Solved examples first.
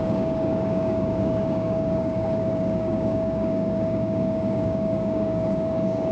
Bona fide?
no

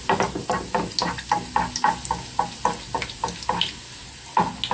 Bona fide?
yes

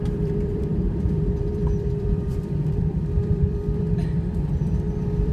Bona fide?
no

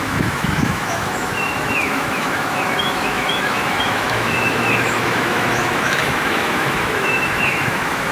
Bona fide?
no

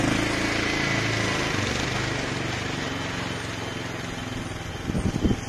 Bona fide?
yes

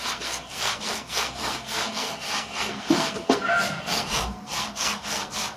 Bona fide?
no